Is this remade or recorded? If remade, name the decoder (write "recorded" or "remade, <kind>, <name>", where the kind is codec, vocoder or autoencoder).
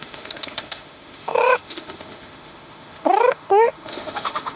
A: remade, autoencoder, DAC-VAE